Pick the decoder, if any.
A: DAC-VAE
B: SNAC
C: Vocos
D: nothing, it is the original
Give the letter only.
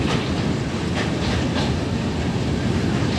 D